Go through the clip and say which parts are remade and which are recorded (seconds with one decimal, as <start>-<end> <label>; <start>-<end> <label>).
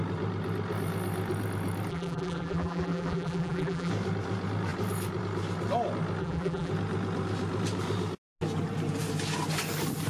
0.0-1.9 recorded; 1.9-3.9 remade; 3.9-6.2 recorded; 6.2-6.7 remade; 6.7-10.1 recorded